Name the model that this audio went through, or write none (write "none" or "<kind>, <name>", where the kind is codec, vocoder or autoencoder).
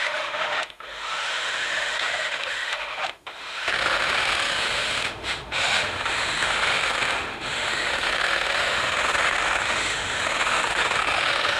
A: autoencoder, DAC-VAE